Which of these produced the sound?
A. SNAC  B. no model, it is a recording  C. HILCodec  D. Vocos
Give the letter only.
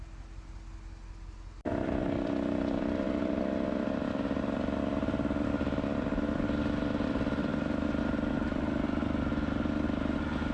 B